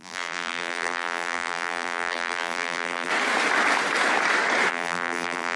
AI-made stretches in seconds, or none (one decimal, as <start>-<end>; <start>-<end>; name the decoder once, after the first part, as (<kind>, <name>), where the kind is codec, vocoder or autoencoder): 0.0-3.1 (vocoder, BigVGAN v2); 4.7-5.6